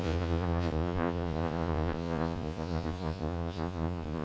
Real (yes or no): no